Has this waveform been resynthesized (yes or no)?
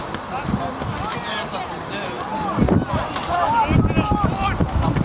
no